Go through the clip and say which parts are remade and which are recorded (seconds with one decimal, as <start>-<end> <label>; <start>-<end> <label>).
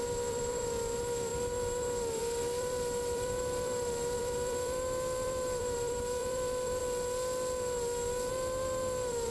0.0-6.8 remade; 6.8-8.3 recorded; 8.3-9.3 remade